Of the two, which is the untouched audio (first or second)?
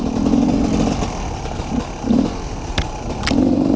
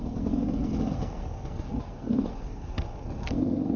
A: first